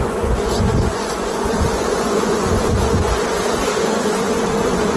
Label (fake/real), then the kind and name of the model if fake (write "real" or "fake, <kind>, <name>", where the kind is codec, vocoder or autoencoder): fake, vocoder, Vocos